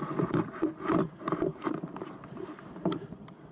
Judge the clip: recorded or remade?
recorded